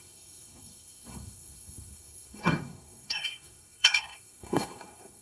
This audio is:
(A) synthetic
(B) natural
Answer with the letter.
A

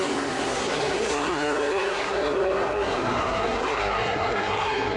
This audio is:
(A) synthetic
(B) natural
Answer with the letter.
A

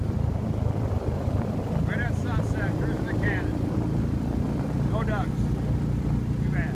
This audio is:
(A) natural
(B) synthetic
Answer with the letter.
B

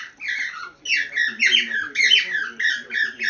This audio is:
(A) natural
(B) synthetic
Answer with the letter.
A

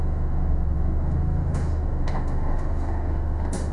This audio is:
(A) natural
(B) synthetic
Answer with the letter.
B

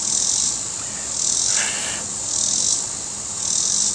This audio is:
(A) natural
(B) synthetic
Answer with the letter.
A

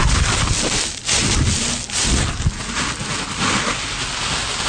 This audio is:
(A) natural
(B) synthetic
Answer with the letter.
A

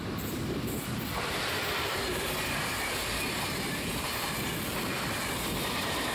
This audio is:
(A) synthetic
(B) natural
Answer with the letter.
A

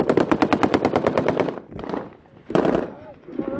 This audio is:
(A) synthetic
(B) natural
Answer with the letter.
B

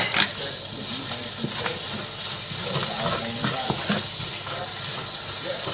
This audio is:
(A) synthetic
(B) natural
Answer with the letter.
B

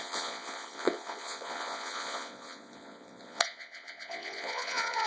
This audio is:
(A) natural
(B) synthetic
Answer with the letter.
B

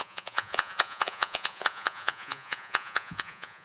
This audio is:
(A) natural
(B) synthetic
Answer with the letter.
B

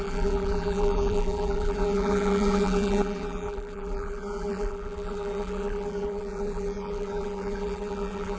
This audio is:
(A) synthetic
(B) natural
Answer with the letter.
A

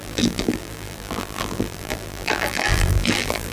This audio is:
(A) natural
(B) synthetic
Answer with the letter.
B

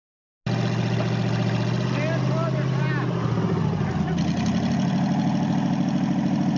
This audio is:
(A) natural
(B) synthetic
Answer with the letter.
A